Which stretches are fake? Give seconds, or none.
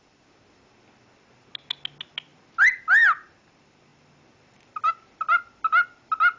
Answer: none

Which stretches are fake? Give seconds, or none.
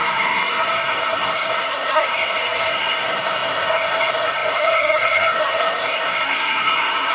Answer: 0.0-7.1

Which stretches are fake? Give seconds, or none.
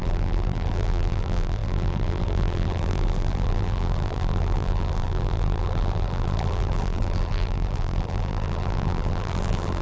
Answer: 0.0-9.8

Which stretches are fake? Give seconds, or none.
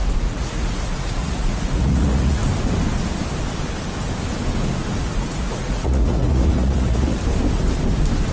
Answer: 0.0-2.4; 5.0-7.2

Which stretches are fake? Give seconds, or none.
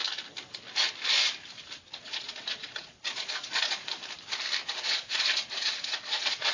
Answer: 1.9-3.9; 4.7-6.5